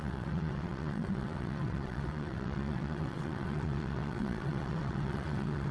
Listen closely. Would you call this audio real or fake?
fake